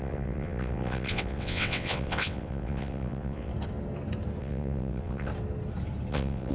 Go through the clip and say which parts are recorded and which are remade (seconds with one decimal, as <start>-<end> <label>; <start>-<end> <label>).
0.0-3.5 remade; 3.5-4.4 recorded; 4.4-5.3 remade; 5.3-6.1 recorded; 6.1-6.5 remade